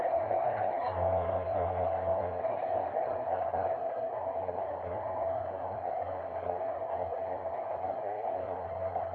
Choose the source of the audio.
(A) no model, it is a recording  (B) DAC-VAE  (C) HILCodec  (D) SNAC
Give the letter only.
D